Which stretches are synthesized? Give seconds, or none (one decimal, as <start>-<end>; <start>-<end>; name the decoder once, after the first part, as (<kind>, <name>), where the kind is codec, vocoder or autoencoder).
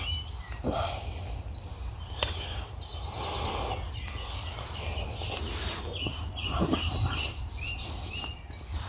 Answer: 6.1-7.4 (vocoder, BigVGAN v2)